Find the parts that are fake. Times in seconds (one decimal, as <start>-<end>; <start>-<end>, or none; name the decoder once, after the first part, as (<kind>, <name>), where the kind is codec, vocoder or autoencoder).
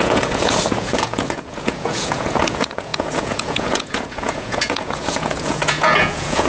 0.0-6.5 (vocoder, Vocos)